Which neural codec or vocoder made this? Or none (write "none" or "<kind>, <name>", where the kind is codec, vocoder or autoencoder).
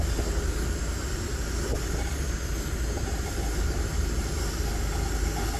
none